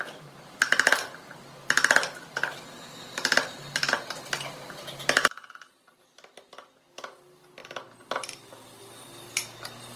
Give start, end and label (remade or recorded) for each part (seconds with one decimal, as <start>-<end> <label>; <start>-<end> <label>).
0.0-10.0 recorded